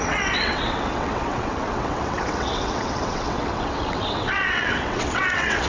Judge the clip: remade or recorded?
remade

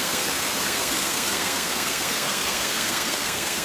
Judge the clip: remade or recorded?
remade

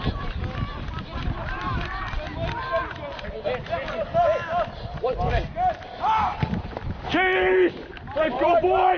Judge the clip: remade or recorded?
recorded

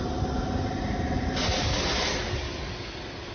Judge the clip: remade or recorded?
recorded